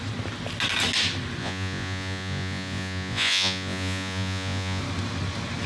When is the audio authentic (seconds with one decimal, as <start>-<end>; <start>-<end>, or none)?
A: 0.0-1.4; 4.8-5.7